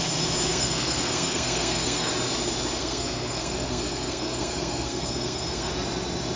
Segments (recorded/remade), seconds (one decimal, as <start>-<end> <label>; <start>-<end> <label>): 0.0-0.5 recorded; 0.5-2.1 remade; 2.1-2.8 recorded; 2.8-5.7 remade; 5.7-6.4 recorded